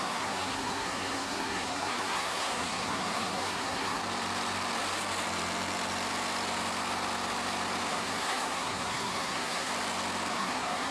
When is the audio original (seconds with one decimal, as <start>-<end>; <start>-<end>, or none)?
4.0-7.9; 9.7-10.3

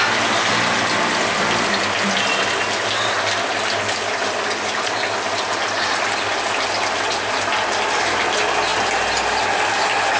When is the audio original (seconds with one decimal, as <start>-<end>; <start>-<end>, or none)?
0.0-10.2

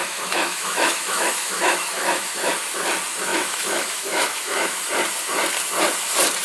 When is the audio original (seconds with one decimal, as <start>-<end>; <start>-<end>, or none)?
2.5-3.3; 4.8-6.4

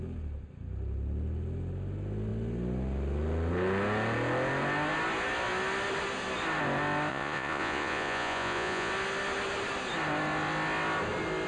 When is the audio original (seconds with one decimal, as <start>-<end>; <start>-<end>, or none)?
0.0-7.1; 8.9-11.5

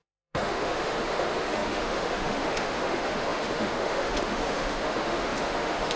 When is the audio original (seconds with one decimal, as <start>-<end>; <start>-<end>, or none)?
none

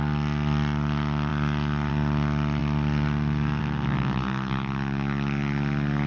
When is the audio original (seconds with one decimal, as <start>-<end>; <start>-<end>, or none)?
0.0-6.1

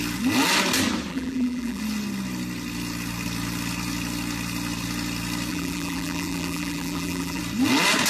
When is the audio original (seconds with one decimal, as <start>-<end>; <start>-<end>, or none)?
0.0-1.1; 1.8-5.5; 7.4-8.1

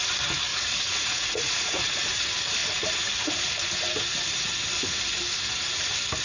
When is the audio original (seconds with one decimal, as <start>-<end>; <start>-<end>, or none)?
0.0-0.5; 2.0-6.2